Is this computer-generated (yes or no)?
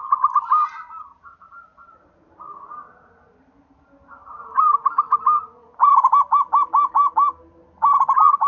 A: no